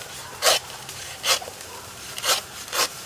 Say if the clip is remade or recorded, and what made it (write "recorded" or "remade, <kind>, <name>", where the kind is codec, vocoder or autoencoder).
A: remade, vocoder, BigVGAN v2